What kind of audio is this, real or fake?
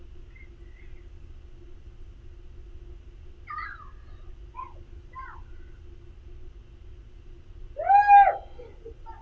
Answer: real